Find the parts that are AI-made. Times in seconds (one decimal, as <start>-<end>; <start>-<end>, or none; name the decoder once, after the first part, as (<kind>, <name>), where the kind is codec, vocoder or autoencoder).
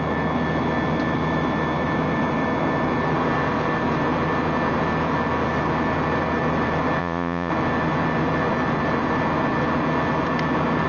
7.0-7.5 (vocoder, Vocos)